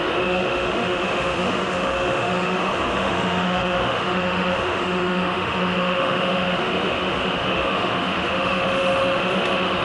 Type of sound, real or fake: fake